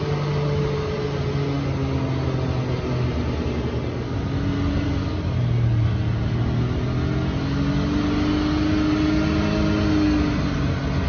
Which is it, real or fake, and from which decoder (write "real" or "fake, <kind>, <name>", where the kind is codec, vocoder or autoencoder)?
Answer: real